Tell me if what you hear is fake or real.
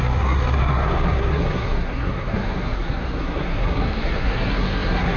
fake